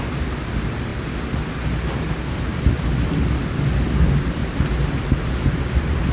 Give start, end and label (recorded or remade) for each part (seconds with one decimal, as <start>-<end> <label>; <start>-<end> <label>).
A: 0.0-4.4 recorded; 4.4-5.6 remade; 5.6-6.1 recorded